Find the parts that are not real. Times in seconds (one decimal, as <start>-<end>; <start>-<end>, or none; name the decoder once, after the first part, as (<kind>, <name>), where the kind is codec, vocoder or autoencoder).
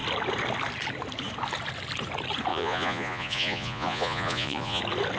2.5-4.8 (vocoder, Vocos)